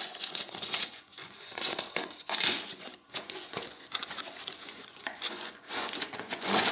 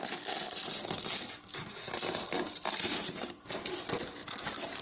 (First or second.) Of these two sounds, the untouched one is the second